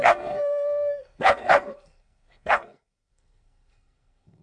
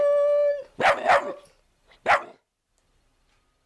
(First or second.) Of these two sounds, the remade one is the first